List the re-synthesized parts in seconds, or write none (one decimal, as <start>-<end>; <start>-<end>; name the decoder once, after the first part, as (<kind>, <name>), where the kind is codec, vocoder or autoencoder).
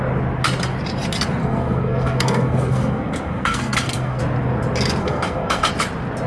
1.4-4.2 (codec, SNAC); 5.0-5.7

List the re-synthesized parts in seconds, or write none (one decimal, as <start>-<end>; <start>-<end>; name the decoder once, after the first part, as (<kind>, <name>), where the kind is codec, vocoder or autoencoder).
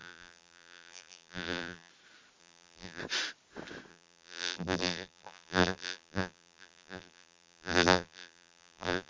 0.0-1.9 (vocoder, BigVGAN v2); 2.4-3.0; 3.9-9.1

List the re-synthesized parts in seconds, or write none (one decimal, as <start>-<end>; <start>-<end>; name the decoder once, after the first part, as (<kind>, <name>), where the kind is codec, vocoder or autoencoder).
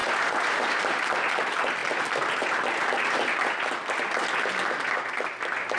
0.0-0.8 (vocoder, BigVGAN v2)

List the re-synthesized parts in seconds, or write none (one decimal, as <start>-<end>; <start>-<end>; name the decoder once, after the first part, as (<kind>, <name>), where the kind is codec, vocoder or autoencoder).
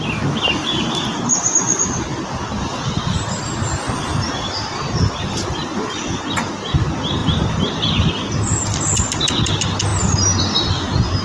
none